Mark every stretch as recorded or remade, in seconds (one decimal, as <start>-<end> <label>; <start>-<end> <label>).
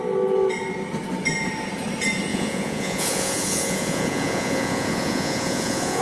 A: 0.0-2.3 recorded; 2.3-6.0 remade